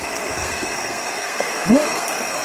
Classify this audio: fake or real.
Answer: fake